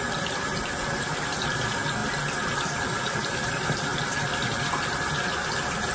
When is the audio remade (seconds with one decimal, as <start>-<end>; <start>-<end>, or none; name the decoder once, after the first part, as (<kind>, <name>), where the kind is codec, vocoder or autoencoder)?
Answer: 0.0-2.0 (vocoder, BigVGAN v2); 2.9-3.9